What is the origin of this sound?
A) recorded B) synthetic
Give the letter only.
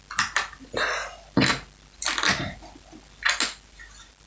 A